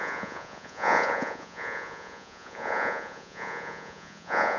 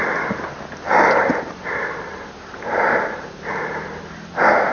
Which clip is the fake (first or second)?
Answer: first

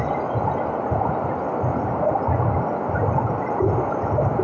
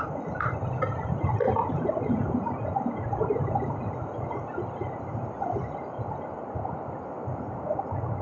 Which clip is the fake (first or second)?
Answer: second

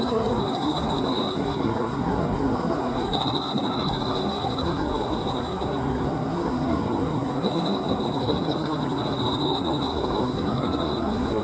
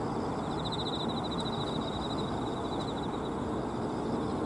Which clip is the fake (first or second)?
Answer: first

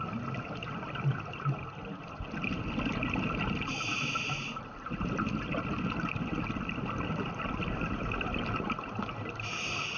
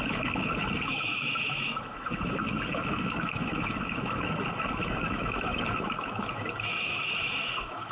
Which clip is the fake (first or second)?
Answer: second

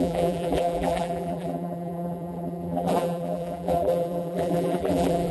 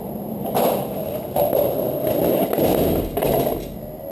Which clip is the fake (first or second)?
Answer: first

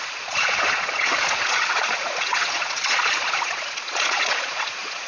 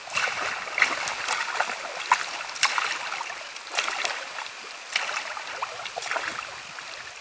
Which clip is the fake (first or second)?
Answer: first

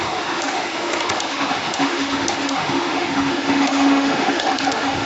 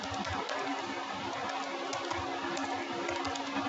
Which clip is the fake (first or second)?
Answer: first